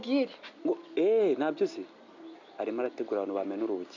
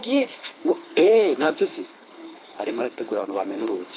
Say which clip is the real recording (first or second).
first